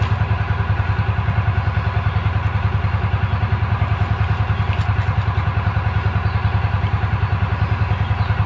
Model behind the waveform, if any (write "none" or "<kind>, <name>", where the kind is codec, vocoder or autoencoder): none